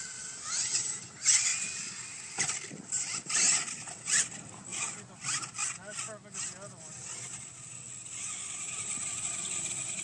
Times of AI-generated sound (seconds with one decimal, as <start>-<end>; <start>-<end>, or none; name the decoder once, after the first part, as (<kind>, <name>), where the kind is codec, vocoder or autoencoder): none